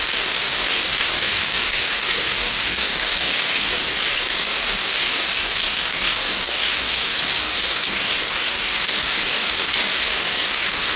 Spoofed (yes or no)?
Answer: yes